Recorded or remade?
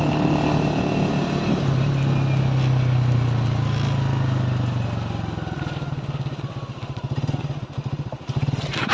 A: recorded